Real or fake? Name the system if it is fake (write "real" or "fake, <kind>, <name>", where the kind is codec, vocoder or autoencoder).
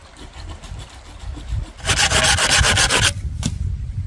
real